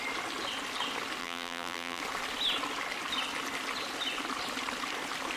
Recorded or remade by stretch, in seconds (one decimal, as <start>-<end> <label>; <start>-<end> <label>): 0.0-1.2 recorded; 1.2-2.0 remade; 2.0-5.4 recorded